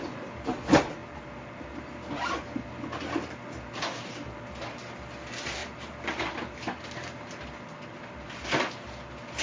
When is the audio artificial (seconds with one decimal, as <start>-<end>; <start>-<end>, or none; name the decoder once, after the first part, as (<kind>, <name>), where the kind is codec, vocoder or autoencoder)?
none